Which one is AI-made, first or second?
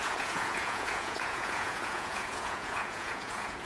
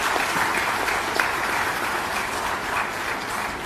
first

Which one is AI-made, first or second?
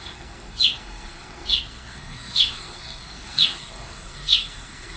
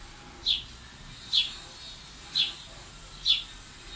first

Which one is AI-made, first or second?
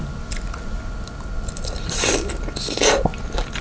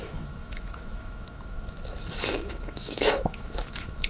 second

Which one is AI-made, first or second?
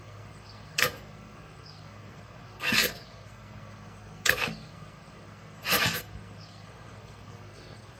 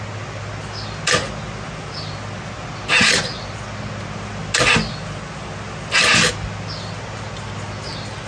first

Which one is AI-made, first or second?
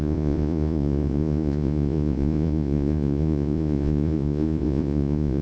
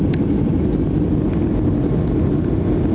first